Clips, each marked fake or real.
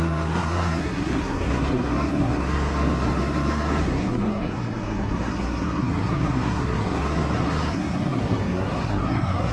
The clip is fake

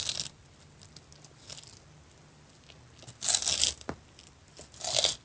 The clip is real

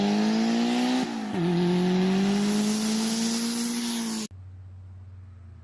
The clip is real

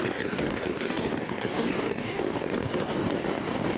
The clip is fake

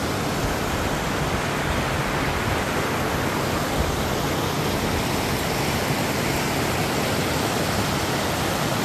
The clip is real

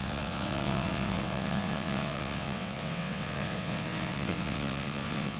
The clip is fake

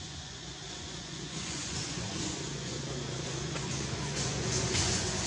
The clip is fake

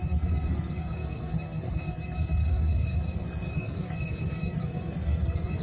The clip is fake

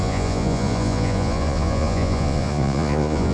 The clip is fake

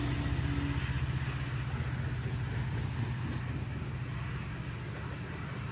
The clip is real